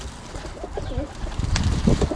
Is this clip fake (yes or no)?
no